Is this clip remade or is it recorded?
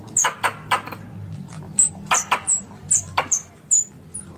remade